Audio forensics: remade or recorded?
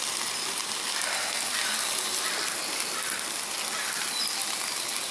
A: recorded